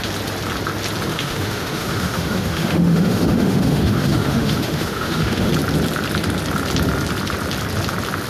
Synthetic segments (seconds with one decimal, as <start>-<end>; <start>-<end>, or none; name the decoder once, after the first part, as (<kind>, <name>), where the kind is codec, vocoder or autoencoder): 1.1-5.5 (autoencoder, DAC-VAE)